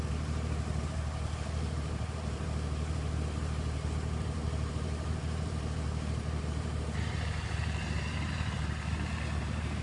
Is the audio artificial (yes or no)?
yes